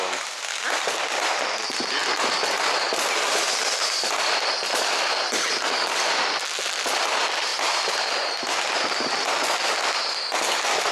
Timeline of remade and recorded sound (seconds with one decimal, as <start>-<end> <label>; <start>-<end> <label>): 0.0-10.9 recorded